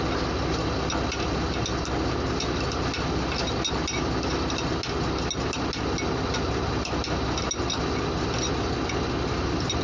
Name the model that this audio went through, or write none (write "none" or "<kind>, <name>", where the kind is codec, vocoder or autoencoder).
none